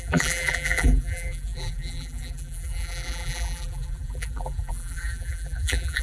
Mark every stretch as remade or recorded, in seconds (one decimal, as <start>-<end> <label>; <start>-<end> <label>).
0.0-6.0 remade